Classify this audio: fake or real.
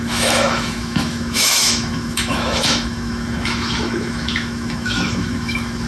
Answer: fake